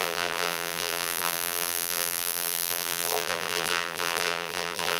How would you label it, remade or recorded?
remade